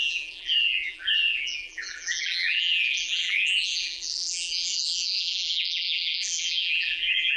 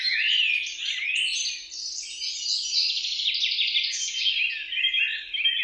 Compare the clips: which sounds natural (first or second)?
second